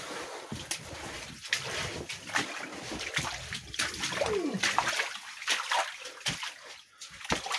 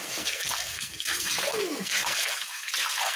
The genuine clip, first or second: first